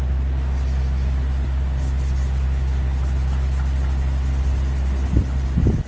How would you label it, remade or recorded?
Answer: recorded